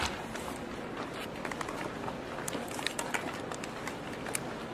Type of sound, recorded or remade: recorded